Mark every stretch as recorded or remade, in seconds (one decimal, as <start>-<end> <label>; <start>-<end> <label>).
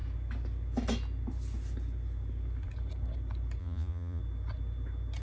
0.0-3.6 recorded; 3.6-4.2 remade; 4.2-5.2 recorded